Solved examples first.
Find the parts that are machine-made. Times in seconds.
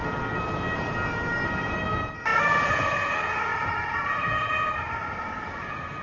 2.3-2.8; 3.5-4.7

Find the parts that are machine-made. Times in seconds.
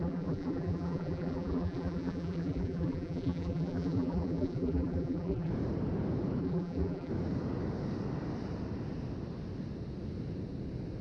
0.0-5.5; 6.4-7.1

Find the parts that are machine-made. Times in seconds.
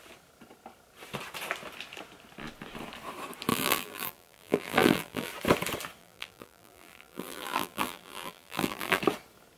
3.5-5.3; 6.0-9.0